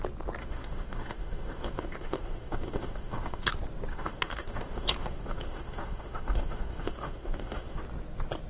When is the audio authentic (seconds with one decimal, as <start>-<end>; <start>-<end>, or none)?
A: 0.0-0.4; 3.5-3.9; 7.8-8.5